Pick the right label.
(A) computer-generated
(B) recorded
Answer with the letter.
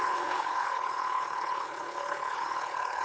A